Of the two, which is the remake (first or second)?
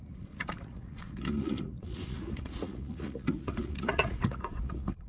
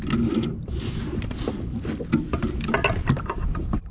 first